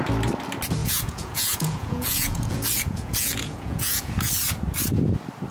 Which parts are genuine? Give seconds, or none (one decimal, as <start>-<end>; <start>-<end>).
0.0-0.8; 4.1-5.5